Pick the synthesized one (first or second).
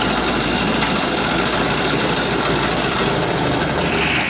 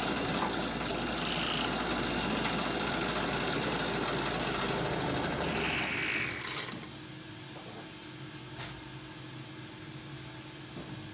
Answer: first